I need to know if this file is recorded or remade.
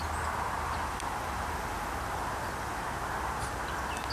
recorded